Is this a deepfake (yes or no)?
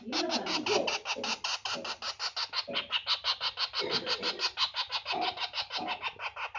no